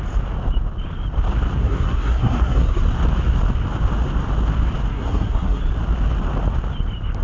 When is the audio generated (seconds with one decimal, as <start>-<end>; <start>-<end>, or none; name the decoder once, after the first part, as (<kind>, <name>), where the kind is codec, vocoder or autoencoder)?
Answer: 1.6-2.8 (codec, SNAC); 4.9-5.6